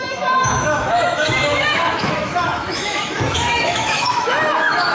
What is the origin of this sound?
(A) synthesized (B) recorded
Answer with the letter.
A